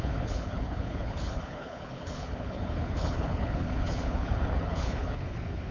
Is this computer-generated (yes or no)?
yes